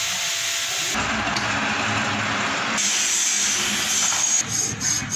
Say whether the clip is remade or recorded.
recorded